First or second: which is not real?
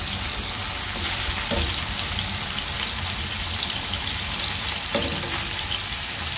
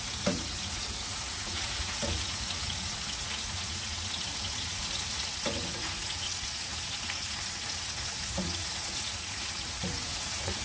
second